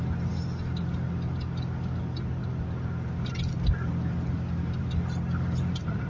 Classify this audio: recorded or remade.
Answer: recorded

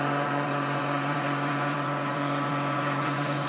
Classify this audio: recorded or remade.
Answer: remade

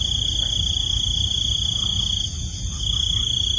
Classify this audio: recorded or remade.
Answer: recorded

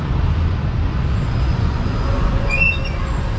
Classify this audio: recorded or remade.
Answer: remade